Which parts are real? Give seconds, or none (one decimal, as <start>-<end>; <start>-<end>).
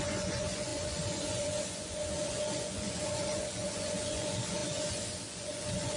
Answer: none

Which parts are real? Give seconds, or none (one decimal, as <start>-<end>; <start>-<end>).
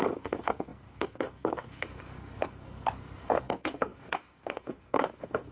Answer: none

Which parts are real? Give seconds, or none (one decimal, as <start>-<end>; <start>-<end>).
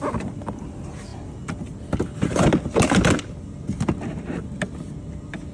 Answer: 0.0-5.5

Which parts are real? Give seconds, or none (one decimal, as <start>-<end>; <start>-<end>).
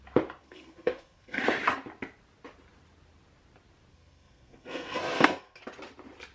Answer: 0.0-0.4; 1.4-3.9; 5.6-6.3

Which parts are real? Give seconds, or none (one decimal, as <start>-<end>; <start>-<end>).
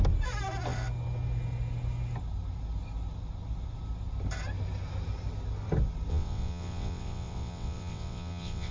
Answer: 0.0-6.1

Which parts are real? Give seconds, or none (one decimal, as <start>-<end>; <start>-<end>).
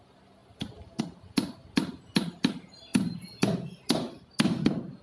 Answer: 0.0-5.0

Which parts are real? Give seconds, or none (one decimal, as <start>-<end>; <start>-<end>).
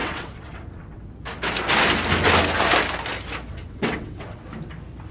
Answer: 1.1-3.5; 4.4-5.1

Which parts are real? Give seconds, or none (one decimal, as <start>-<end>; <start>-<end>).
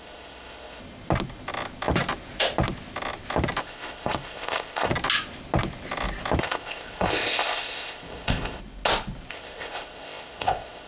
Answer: 0.8-3.6; 4.9-6.4; 8.6-9.3